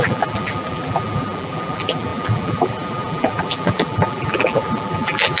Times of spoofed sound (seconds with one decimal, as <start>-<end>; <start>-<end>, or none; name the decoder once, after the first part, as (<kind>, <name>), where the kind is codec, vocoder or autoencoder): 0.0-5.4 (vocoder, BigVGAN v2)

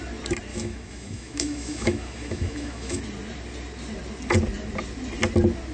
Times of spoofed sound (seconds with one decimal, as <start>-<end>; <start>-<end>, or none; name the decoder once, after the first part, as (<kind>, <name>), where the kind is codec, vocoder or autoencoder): 0.5-3.0 (autoencoder, DAC-VAE)

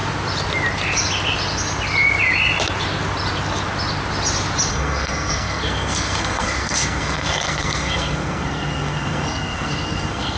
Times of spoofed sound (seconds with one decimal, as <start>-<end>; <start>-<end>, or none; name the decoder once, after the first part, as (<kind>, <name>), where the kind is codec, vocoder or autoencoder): 4.7-10.4 (codec, SNAC)

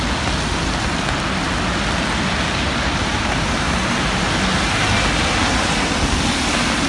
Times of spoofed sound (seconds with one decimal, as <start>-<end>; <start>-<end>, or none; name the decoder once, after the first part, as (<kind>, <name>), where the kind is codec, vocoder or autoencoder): 3.1-3.8 (vocoder, BigVGAN v2)